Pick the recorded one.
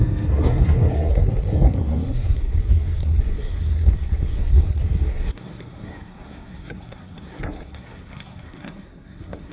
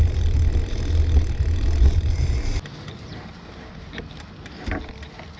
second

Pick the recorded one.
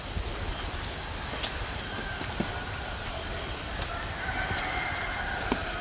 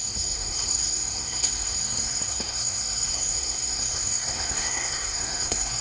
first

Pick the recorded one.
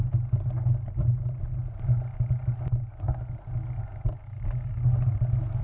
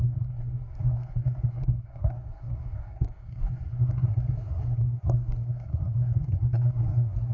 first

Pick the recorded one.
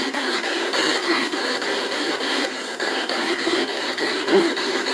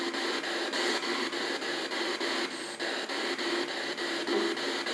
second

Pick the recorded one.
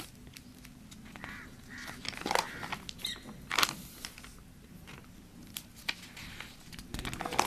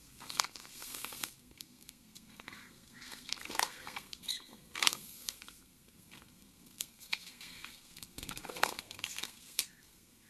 first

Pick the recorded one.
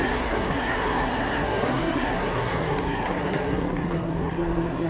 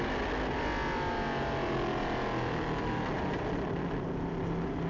second